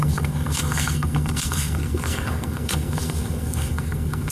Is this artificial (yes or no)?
yes